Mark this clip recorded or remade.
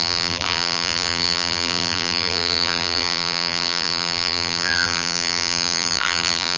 remade